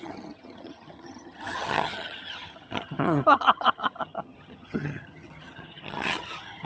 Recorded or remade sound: remade